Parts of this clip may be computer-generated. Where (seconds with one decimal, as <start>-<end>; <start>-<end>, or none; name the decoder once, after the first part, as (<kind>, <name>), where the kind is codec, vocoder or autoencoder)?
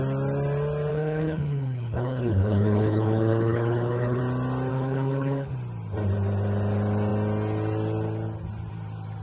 0.9-4.2 (codec, HILCodec); 4.7-5.5